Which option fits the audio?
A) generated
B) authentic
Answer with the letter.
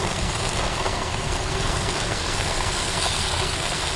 A